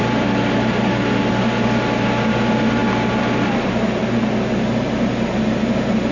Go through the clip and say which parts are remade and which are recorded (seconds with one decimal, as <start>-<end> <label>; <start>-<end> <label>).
0.0-6.1 recorded